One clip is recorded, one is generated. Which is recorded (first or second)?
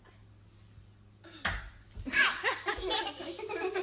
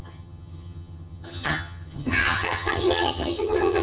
first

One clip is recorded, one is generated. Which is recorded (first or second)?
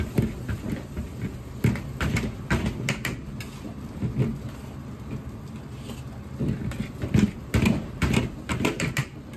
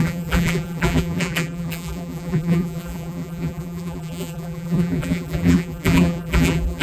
first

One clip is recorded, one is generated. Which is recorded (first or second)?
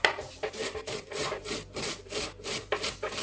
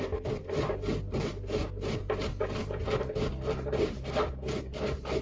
second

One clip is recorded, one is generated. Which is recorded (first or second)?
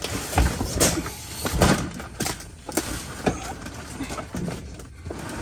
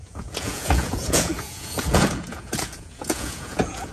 first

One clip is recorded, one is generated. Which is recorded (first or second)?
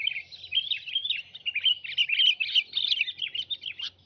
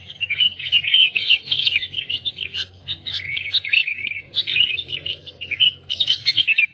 first